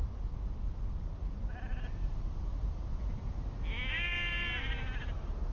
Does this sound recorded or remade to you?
recorded